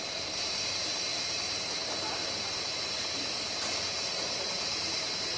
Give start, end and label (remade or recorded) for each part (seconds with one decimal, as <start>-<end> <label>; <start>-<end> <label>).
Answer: 0.0-1.1 remade; 1.1-2.7 recorded; 2.7-5.4 remade